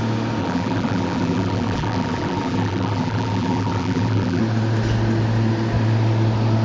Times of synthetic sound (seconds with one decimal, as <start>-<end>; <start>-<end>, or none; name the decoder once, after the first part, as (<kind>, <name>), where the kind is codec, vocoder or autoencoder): 0.4-4.4 (vocoder, BigVGAN v2)